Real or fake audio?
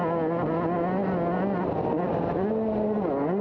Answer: real